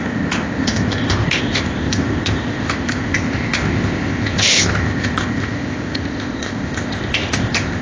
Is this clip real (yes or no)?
no